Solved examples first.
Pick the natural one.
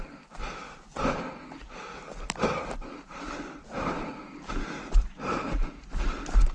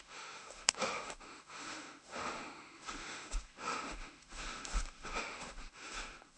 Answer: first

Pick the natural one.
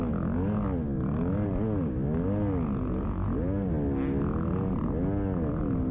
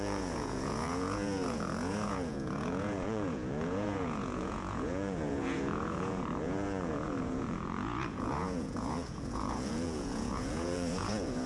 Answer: first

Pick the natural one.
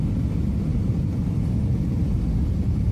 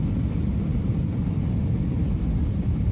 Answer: first